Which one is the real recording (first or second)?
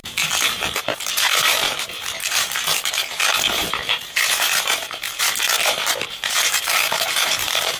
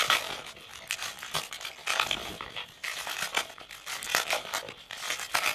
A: second